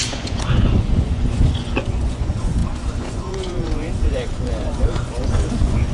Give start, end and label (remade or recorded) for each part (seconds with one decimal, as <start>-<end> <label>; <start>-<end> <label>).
0.0-5.9 remade